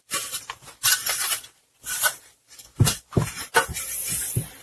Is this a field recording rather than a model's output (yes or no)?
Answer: yes